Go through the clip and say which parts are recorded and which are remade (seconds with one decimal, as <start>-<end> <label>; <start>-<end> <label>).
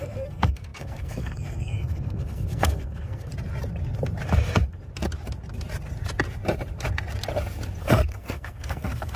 0.0-3.3 remade; 3.3-7.8 recorded; 7.8-9.2 remade